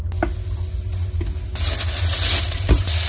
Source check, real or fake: real